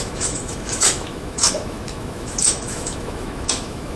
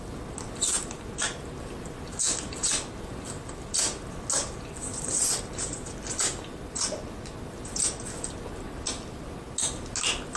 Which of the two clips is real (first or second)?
second